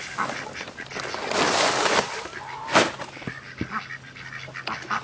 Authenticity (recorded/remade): recorded